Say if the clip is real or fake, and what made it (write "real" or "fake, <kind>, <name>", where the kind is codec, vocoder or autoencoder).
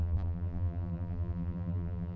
fake, vocoder, BigVGAN v2